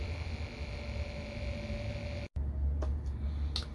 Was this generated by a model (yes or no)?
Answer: no